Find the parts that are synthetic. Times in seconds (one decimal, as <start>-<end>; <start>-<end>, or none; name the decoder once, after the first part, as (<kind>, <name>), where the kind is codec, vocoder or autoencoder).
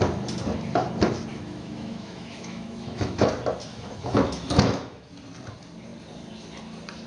1.3-3.3 (autoencoder, DAC-VAE); 3.7-5.1